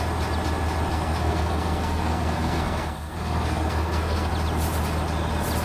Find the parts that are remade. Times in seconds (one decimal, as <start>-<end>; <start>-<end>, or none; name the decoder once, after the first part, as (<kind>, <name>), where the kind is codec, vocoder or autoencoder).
0.9-4.3 (codec, SNAC)